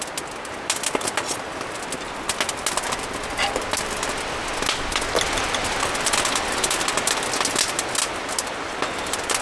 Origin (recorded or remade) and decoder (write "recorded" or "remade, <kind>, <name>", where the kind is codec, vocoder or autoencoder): recorded